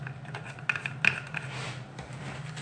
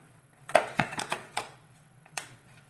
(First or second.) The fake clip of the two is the second